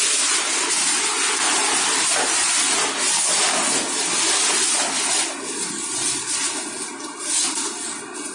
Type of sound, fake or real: real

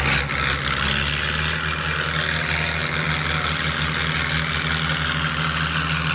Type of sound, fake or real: real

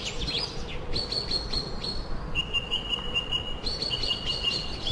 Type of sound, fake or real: real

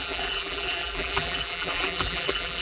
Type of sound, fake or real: fake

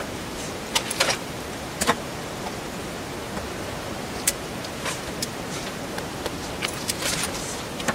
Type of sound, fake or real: fake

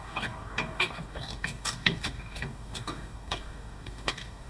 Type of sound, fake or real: fake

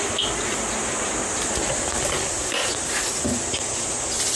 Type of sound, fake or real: real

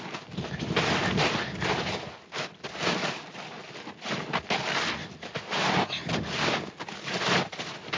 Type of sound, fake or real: real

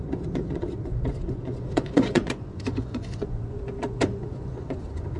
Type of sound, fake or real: fake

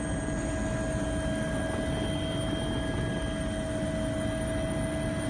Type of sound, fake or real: real